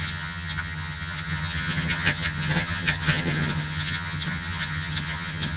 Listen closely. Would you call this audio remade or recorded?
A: remade